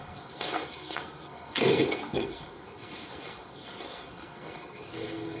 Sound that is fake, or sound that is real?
fake